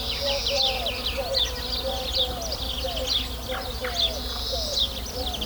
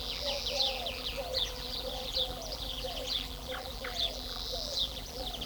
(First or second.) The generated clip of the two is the second